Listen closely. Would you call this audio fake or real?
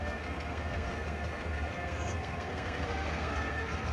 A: fake